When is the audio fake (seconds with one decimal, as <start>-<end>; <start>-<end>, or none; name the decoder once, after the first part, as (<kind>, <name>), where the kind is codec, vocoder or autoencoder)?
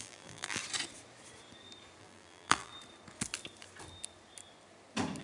0.0-0.6 (vocoder, BigVGAN v2); 2.0-2.7